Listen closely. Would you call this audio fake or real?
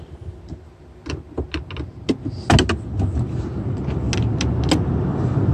real